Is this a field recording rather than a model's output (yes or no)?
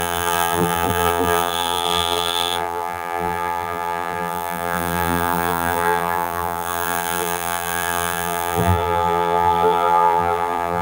no